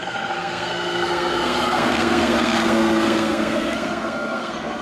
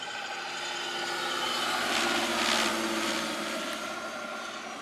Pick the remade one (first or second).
first